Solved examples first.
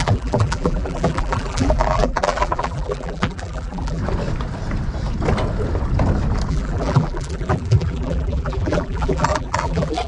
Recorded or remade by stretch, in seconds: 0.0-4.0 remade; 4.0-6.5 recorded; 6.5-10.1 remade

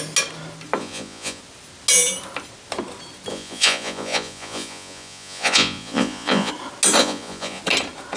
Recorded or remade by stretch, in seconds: 0.0-0.8 recorded; 0.8-1.4 remade; 1.4-3.3 recorded; 3.3-6.5 remade; 6.5-7.0 recorded; 7.0-7.6 remade; 7.6-8.2 recorded